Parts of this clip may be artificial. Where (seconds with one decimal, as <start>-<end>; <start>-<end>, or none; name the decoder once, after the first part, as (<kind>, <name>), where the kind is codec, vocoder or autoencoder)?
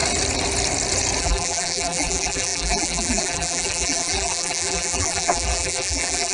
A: 1.2-6.3 (vocoder, BigVGAN v2)